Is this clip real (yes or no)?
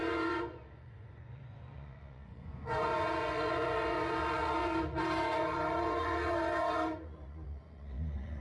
no